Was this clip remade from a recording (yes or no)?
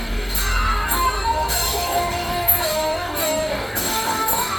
yes